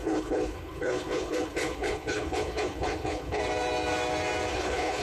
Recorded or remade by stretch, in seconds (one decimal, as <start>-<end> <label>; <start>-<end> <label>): 0.0-3.4 remade; 3.4-4.5 recorded; 4.5-5.0 remade